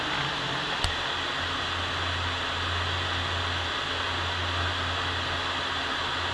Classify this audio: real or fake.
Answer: real